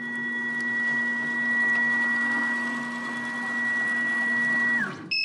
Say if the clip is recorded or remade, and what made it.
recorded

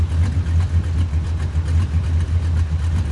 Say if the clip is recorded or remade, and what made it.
recorded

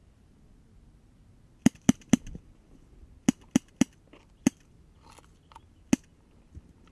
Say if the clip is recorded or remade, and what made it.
recorded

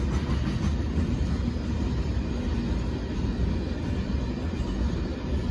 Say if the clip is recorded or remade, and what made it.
recorded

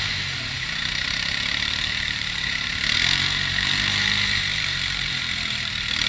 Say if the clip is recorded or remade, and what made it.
remade, vocoder, BigVGAN v2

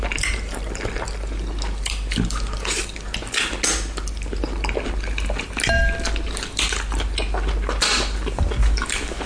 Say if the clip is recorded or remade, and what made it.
recorded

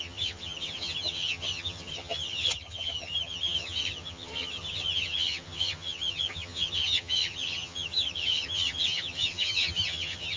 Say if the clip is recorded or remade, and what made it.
remade, vocoder, HiFi-GAN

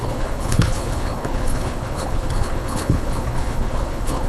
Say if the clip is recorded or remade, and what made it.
remade, codec, HILCodec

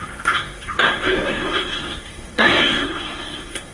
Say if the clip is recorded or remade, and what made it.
remade, codec, SNAC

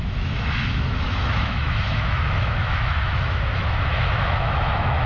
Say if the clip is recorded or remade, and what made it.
remade, autoencoder, DAC-VAE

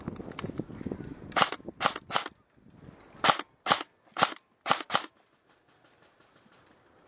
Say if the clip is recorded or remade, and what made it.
recorded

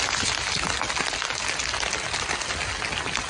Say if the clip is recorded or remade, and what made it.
recorded